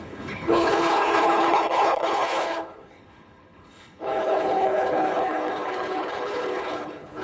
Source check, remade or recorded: remade